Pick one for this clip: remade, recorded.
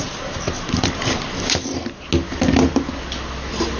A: recorded